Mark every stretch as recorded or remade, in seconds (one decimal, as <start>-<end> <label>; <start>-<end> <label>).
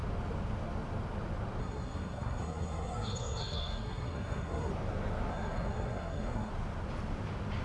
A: 0.0-1.6 recorded; 1.6-4.7 remade; 4.7-5.3 recorded; 5.3-6.5 remade; 6.5-7.6 recorded